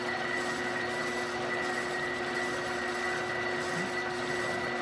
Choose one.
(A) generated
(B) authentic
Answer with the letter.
B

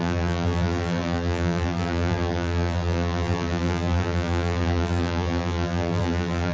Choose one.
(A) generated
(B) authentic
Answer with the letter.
A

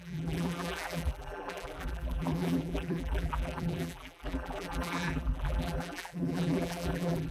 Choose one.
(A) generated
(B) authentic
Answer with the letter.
A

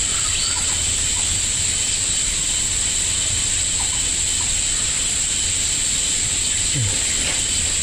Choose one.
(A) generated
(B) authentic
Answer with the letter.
B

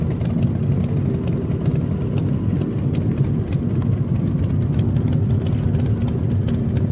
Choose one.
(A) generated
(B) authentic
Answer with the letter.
B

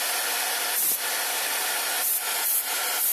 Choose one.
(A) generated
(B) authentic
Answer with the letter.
B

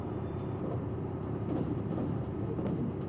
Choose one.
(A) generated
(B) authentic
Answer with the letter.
A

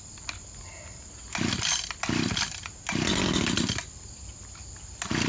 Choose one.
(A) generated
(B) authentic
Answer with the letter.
B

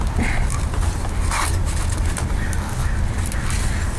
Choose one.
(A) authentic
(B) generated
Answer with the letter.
A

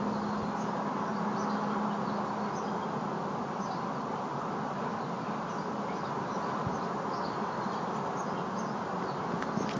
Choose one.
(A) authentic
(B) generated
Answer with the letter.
A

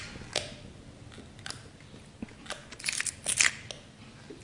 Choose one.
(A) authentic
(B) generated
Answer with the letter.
A